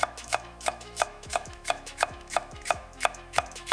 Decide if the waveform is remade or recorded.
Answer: remade